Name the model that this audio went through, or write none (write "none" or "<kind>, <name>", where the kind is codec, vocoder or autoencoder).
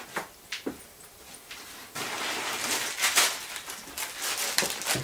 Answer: vocoder, BigVGAN v2